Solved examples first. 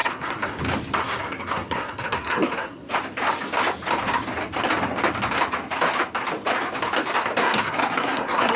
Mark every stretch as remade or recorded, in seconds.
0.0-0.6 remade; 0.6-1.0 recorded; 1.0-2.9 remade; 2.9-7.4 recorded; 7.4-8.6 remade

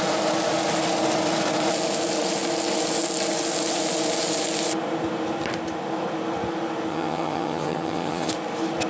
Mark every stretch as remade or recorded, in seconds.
0.0-6.9 recorded; 6.9-8.3 remade; 8.3-8.9 recorded

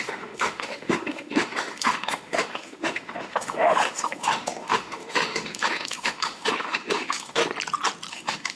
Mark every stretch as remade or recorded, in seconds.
0.0-7.4 remade; 7.4-8.1 recorded; 8.1-8.6 remade

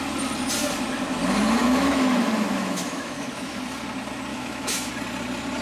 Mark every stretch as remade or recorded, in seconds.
0.0-1.6 recorded; 1.6-3.6 remade; 3.6-4.3 recorded; 4.3-4.9 remade; 4.9-5.6 recorded

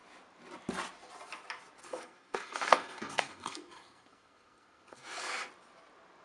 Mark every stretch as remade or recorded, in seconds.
0.0-1.8 recorded; 1.8-5.5 remade; 5.5-6.2 recorded

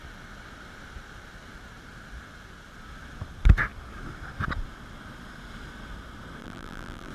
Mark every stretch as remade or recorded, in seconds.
0.0-6.4 recorded; 6.4-7.1 remade